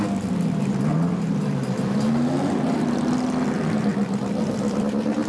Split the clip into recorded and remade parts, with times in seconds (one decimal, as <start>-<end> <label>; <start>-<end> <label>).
0.0-0.9 remade; 0.9-3.4 recorded; 3.4-3.9 remade; 3.9-4.4 recorded; 4.4-5.3 remade